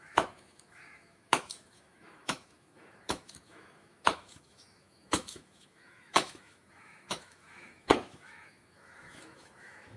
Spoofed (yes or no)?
yes